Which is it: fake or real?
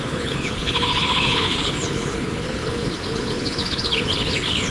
fake